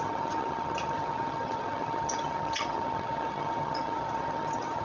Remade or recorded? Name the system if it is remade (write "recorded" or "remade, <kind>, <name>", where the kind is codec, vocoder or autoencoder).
remade, vocoder, HiFi-GAN